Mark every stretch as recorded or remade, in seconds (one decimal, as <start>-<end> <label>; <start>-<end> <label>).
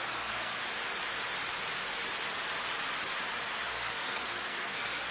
0.0-0.6 remade; 0.6-3.7 recorded; 3.7-5.1 remade